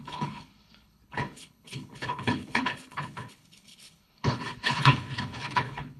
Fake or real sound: fake